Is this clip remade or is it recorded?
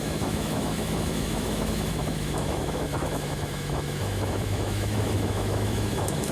remade